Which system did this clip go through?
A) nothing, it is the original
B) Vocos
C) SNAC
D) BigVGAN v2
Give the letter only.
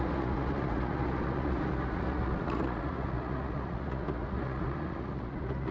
B